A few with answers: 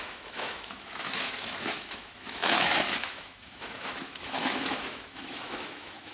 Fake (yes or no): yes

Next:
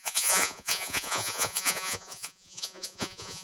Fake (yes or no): yes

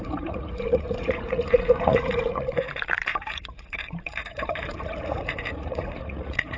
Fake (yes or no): yes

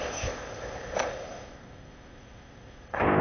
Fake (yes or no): yes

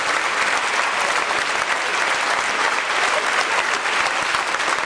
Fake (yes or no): no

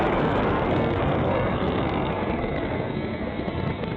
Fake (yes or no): yes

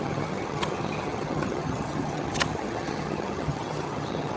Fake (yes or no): yes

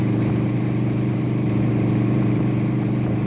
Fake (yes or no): yes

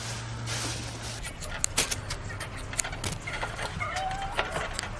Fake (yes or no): no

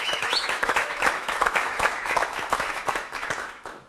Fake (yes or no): yes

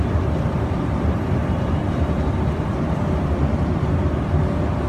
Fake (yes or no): yes